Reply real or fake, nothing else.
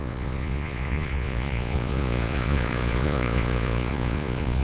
fake